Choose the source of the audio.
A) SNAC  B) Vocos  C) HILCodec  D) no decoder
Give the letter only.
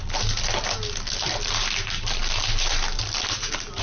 D